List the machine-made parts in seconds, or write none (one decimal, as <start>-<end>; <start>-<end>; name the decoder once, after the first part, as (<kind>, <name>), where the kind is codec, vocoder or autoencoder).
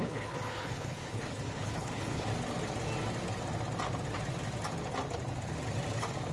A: 0.0-2.3 (codec, HILCodec)